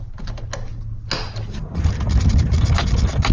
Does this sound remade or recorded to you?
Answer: recorded